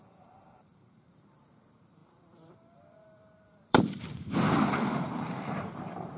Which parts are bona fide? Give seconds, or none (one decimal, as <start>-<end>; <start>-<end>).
none